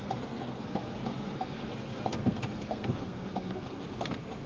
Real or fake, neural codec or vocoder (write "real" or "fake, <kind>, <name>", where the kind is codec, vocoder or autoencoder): fake, codec, SNAC